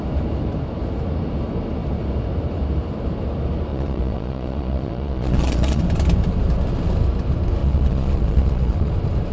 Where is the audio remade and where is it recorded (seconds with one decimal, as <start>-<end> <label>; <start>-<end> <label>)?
0.0-3.7 recorded; 3.7-5.8 remade; 5.8-7.6 recorded; 7.6-8.9 remade; 8.9-9.3 recorded